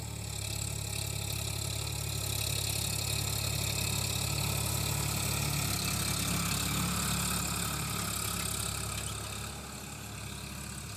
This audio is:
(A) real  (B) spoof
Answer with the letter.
A